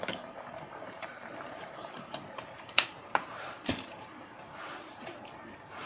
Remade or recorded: remade